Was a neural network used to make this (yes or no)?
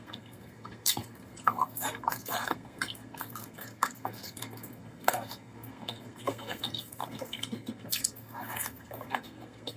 yes